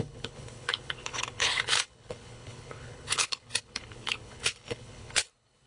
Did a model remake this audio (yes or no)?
yes